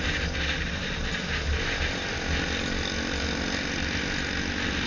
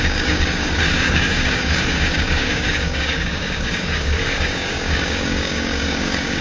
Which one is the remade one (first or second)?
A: second